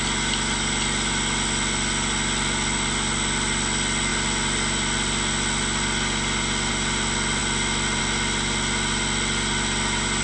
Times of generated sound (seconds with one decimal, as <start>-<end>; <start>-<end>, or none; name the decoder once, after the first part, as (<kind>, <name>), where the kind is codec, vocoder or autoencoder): none